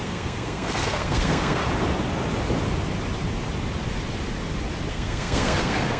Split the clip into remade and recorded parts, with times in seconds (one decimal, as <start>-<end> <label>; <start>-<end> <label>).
0.0-1.6 remade; 1.6-4.9 recorded; 4.9-6.0 remade